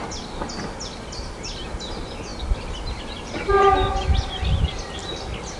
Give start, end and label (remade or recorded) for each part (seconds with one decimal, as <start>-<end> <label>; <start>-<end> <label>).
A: 0.0-5.6 recorded